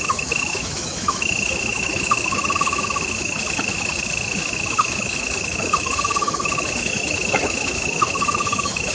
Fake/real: fake